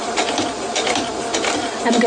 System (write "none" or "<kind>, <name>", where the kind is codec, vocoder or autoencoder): none